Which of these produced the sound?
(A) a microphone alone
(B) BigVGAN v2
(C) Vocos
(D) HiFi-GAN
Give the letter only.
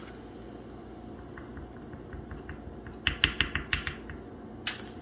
A